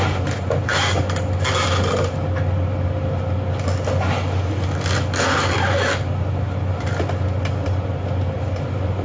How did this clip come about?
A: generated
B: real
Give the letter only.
B